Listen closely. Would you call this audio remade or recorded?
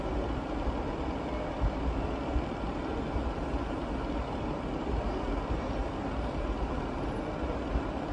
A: recorded